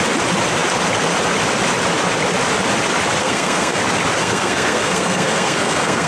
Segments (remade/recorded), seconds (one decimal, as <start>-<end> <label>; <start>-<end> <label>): 0.0-3.2 recorded; 3.2-3.8 remade; 3.8-4.2 recorded; 4.2-6.1 remade